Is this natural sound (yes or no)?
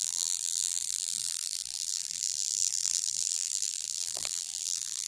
no